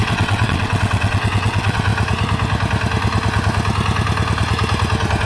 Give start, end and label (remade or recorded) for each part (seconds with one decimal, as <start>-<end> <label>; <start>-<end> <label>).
0.0-1.9 remade; 1.9-5.3 recorded